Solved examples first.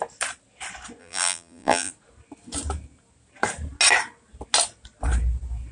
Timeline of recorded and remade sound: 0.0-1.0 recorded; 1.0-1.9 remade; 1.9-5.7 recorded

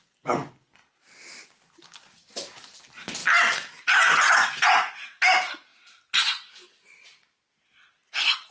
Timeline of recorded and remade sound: 0.0-8.5 recorded

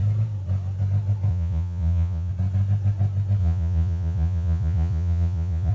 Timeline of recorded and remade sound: 0.0-1.3 recorded; 1.3-2.3 remade; 2.3-3.4 recorded; 3.4-5.7 remade

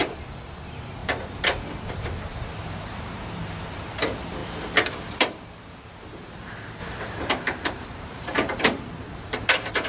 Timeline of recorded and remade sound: 0.0-1.0 remade; 1.0-2.5 recorded; 2.5-6.8 remade; 6.8-7.3 recorded; 7.3-9.9 remade